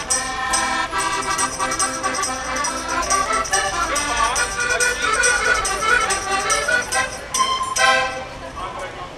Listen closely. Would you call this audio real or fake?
real